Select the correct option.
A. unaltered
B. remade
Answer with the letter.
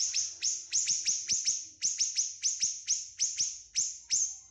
A